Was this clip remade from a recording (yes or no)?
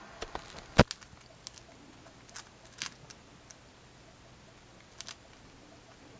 no